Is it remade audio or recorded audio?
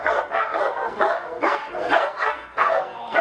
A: remade